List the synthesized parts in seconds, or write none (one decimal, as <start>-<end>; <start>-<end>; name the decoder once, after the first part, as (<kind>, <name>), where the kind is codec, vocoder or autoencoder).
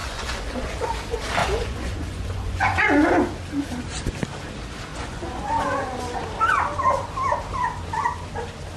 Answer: 0.0-0.7 (vocoder, Vocos); 1.4-3.1; 4.9-5.7